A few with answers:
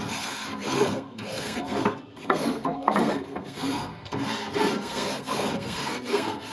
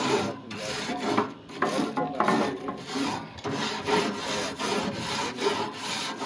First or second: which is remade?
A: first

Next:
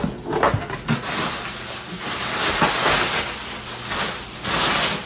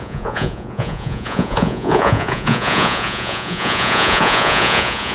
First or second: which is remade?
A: second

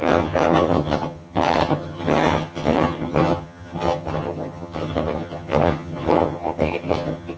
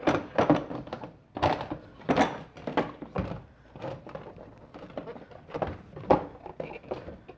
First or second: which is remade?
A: first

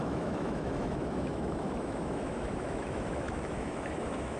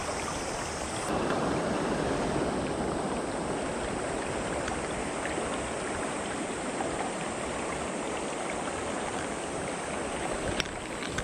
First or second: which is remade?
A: first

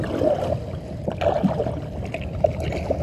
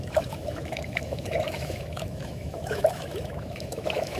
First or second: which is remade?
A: second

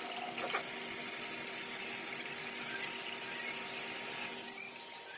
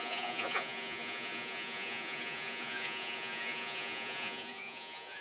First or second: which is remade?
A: second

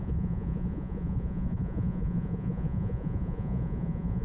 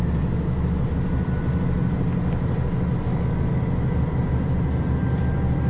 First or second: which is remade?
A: first